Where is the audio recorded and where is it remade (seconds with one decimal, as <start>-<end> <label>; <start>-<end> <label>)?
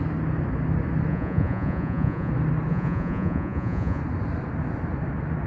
0.0-1.1 recorded; 1.1-2.3 remade; 2.3-2.7 recorded; 2.7-4.0 remade; 4.0-5.5 recorded